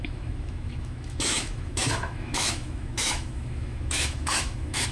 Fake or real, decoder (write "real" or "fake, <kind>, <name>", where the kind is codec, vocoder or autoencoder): fake, autoencoder, DAC-VAE